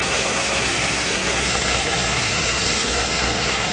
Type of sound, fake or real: fake